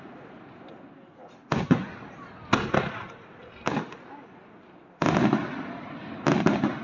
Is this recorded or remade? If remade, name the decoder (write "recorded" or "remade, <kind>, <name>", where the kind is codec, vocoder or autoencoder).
recorded